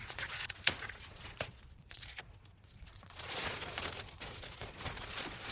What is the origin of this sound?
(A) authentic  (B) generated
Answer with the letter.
B